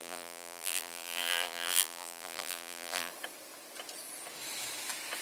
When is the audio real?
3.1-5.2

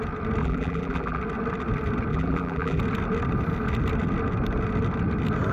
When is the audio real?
0.0-0.4; 1.2-2.1; 2.8-5.5

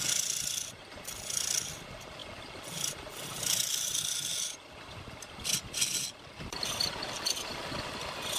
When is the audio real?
0.0-8.4

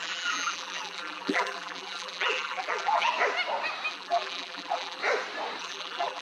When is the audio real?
3.1-3.9; 5.0-5.6

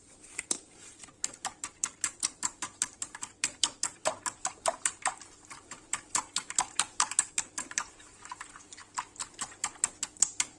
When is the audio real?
8.8-10.6